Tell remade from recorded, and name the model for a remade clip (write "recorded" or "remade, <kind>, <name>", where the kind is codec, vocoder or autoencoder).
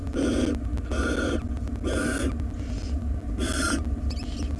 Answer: recorded